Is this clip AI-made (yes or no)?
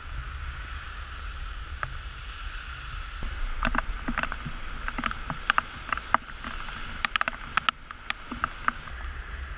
no